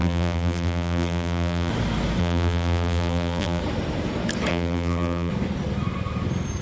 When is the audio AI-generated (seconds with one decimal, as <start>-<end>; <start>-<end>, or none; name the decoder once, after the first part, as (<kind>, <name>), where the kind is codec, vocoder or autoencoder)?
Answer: 0.0-1.7 (vocoder, BigVGAN v2); 2.2-3.6; 4.5-5.3

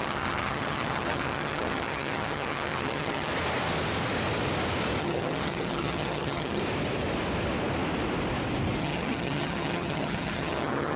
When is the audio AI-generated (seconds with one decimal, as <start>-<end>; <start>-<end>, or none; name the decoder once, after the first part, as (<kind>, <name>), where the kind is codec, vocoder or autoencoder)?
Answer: 0.0-3.3 (vocoder, HiFi-GAN); 5.0-6.6; 8.8-11.0

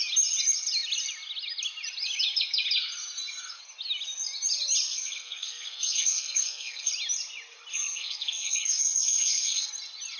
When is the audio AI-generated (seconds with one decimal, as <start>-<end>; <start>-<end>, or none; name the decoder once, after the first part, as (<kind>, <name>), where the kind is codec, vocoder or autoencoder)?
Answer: 4.9-6.9 (codec, SNAC); 7.7-9.7

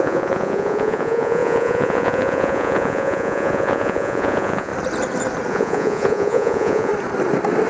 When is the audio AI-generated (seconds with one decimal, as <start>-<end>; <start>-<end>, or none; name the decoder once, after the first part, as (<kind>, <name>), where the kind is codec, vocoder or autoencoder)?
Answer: 0.0-4.7 (vocoder, Vocos); 5.5-6.9

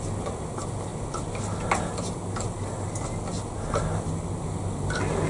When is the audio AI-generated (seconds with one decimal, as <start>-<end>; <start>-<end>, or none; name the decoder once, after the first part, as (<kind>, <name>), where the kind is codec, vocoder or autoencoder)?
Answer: none

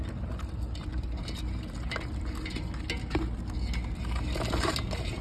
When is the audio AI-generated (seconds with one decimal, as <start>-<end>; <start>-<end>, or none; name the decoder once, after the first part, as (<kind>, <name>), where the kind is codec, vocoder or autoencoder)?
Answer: none

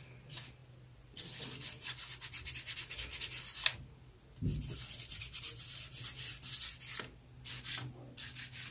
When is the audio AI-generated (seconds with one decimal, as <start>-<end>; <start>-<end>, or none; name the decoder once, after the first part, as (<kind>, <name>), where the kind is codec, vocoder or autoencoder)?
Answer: none

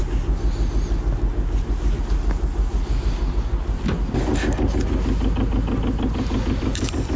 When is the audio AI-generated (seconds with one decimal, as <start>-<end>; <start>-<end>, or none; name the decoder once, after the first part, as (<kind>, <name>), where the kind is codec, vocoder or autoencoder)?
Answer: none